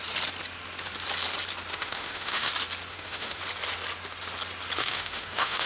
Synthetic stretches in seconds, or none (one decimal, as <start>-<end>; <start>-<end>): 1.7-2.5; 2.9-3.4; 4.8-5.7